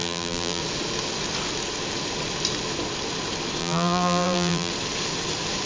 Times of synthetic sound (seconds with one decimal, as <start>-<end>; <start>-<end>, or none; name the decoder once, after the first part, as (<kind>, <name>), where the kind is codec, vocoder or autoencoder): 0.0-0.6 (vocoder, BigVGAN v2); 3.6-4.7